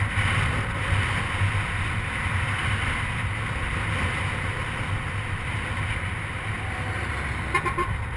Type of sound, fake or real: real